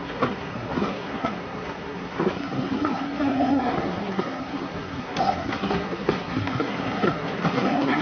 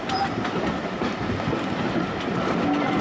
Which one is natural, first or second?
second